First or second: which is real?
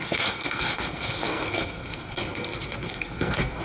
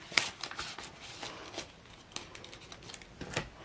second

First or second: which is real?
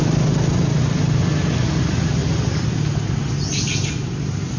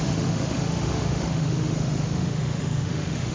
first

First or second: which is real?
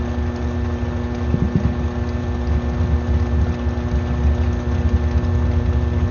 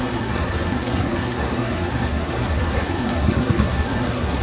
first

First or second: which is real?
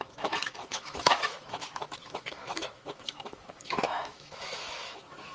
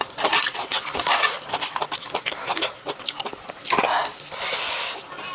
second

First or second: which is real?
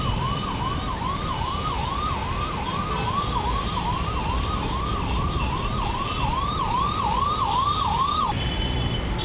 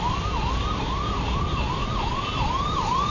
second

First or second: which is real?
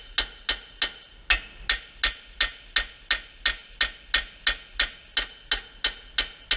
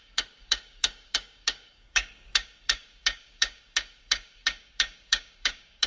first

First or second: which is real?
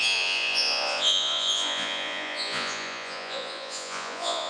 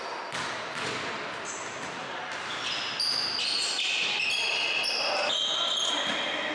second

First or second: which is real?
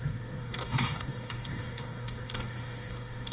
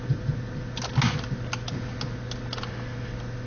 second